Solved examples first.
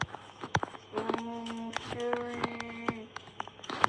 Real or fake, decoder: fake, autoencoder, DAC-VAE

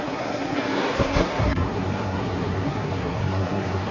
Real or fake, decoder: fake, codec, SNAC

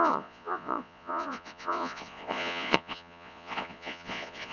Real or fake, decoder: fake, vocoder, Vocos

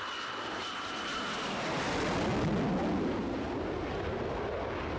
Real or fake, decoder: real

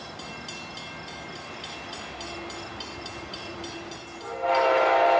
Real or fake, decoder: real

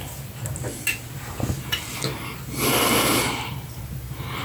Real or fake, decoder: real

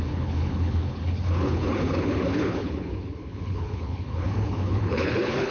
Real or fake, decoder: fake, codec, HILCodec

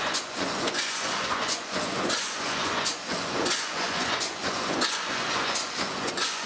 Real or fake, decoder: fake, vocoder, Vocos